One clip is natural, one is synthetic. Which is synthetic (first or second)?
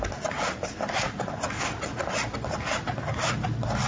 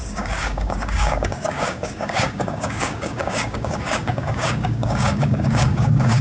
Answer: second